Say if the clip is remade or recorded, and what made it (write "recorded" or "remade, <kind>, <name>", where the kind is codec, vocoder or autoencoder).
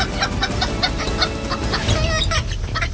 recorded